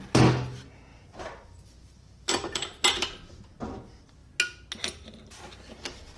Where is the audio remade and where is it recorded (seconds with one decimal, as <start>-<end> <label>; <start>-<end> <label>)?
0.0-0.9 recorded; 0.9-3.3 remade; 3.3-6.2 recorded